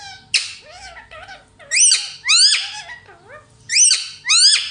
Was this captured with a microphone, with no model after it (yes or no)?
yes